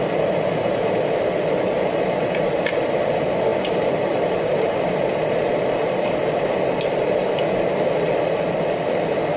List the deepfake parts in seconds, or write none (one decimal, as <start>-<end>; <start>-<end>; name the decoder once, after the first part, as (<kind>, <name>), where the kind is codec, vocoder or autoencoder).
none